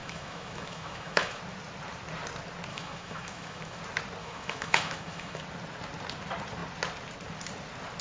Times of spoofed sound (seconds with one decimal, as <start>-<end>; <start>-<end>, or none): 0.0-1.4; 2.7-3.8; 4.2-5.4